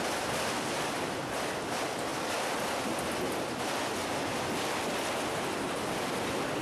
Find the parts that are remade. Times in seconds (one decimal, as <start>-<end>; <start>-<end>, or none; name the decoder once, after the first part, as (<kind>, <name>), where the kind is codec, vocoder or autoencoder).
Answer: none